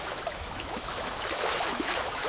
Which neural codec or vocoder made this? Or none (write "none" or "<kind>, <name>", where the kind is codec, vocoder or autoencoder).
autoencoder, DAC-VAE